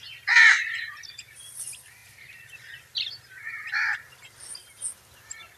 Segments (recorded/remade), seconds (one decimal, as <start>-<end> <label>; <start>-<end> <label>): 0.0-0.4 recorded; 0.4-0.9 remade; 0.9-2.0 recorded; 2.0-4.0 remade; 4.0-5.6 recorded